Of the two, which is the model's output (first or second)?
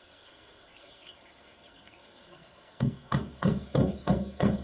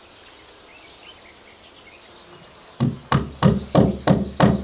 first